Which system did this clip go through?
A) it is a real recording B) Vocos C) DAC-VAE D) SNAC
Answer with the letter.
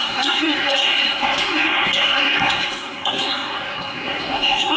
D